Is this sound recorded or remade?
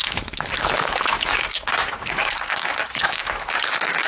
remade